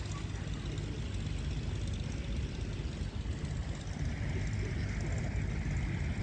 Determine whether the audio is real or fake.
real